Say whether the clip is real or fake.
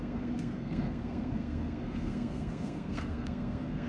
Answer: fake